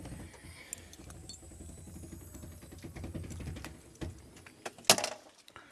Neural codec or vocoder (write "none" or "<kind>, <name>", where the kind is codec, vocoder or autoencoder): none